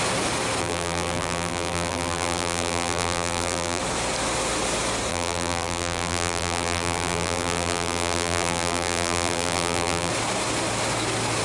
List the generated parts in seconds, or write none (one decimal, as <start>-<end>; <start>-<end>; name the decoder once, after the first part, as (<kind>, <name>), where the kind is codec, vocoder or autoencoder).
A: 0.6-3.8 (vocoder, BigVGAN v2); 5.1-10.1